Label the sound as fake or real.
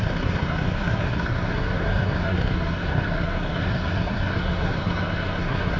fake